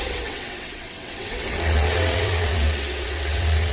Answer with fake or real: fake